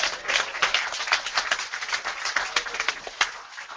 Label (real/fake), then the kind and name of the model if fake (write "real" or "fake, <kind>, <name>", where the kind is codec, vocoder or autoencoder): real